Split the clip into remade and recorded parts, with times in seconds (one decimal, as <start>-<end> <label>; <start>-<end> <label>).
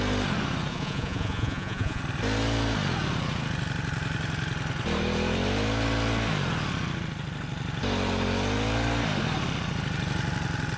0.0-0.7 recorded; 0.7-2.0 remade; 2.0-10.8 recorded